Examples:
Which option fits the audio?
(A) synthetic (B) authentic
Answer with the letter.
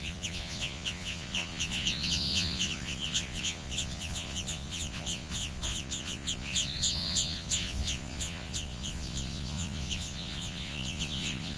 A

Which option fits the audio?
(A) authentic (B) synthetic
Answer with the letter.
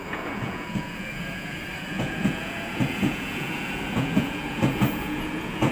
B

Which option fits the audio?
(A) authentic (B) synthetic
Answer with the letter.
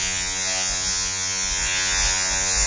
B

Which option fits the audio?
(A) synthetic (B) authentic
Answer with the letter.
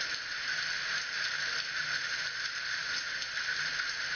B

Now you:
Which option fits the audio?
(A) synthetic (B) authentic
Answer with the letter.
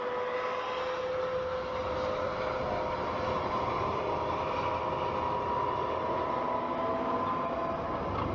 B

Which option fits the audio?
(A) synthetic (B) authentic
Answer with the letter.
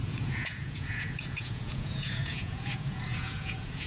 A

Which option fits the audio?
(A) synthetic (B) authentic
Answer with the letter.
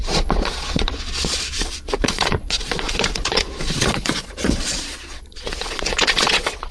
A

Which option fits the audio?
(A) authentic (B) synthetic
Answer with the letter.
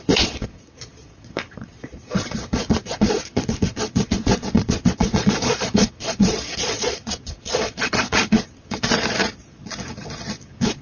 B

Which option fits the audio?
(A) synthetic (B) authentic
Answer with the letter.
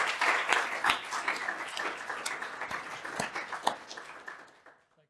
B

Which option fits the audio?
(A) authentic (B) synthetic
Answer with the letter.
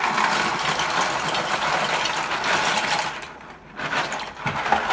A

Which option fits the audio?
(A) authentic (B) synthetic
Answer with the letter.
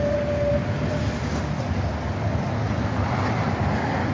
A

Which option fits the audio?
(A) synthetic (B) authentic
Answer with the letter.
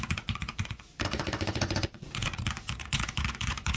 A